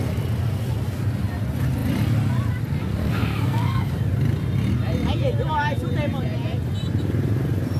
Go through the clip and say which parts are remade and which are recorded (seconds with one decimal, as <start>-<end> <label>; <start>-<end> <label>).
0.0-3.0 recorded; 3.0-3.9 remade; 3.9-7.8 recorded